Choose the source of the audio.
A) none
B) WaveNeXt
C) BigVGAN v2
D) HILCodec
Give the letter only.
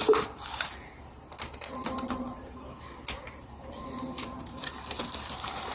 C